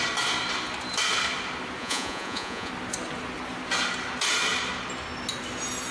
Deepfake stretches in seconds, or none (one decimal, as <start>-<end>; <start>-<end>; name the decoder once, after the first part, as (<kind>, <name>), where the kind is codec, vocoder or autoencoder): 1.8-2.7 (vocoder, Vocos)